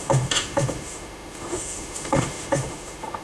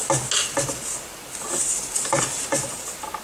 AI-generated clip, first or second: first